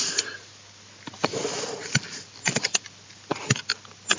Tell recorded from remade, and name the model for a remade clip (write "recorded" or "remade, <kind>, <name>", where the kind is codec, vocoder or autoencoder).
recorded